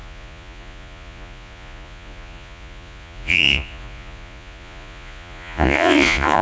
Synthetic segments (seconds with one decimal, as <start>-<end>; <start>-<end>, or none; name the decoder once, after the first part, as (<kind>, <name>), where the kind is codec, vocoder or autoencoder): 0.0-6.4 (vocoder, Vocos)